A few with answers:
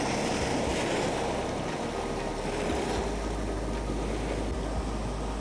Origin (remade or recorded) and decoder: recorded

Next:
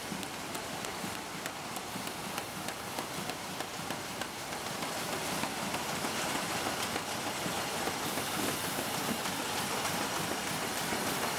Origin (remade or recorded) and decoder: remade, vocoder, BigVGAN v2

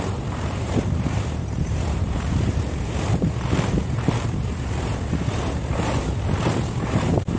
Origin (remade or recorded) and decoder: remade, vocoder, BigVGAN v2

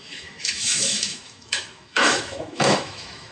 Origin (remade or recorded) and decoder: remade, autoencoder, DAC-VAE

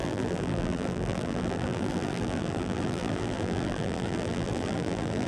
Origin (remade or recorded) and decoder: remade, vocoder, BigVGAN v2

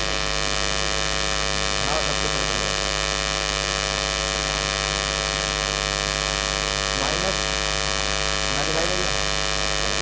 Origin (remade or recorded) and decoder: recorded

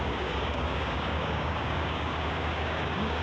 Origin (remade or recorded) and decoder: remade, codec, DAC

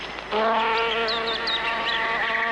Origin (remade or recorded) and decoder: recorded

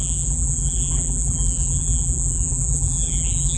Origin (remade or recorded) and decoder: remade, vocoder, BigVGAN v2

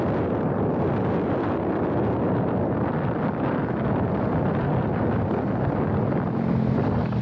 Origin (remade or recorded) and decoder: recorded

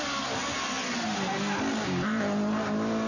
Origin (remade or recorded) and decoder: recorded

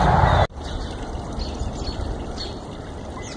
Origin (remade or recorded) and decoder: recorded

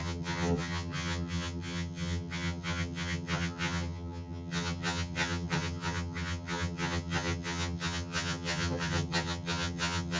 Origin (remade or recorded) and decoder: remade, vocoder, HiFi-GAN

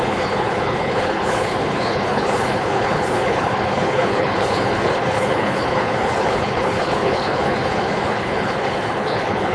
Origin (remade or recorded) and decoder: remade, codec, HILCodec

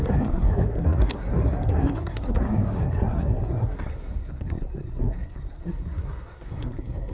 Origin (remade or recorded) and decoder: remade, codec, SNAC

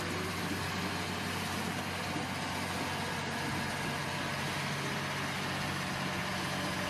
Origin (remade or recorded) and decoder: recorded